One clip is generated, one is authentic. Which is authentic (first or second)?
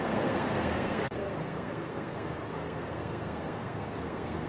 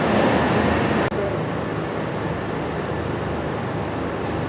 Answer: second